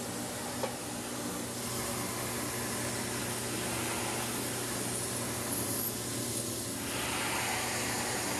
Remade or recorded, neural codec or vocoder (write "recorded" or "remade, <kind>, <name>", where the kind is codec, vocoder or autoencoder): recorded